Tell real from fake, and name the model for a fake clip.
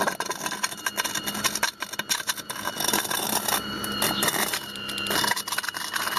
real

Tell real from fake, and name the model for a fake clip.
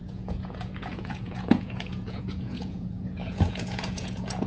fake, vocoder, Vocos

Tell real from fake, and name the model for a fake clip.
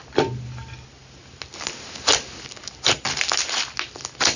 real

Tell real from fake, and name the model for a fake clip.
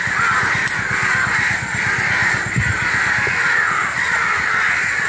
real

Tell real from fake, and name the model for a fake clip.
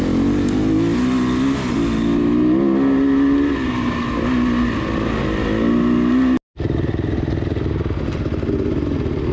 real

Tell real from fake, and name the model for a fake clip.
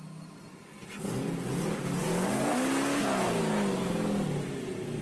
real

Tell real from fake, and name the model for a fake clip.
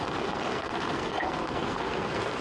fake, codec, SNAC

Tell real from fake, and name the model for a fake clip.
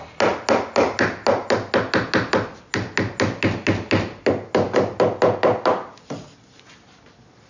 real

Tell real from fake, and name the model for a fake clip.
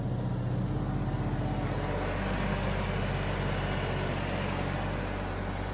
real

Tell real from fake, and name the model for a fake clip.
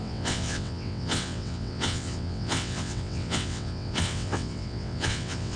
fake, vocoder, WaveNeXt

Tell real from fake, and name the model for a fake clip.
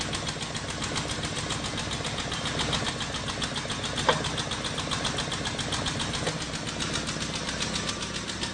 real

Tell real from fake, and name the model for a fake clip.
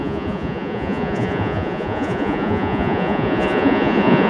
fake, vocoder, Vocos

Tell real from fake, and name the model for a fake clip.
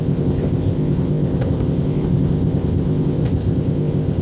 fake, codec, ZipCodec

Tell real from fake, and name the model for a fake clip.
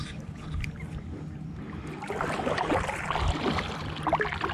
real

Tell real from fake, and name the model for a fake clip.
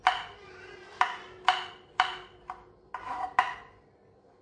real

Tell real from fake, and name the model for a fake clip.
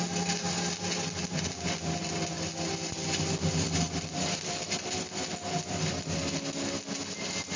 real